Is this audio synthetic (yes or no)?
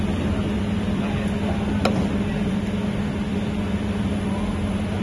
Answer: no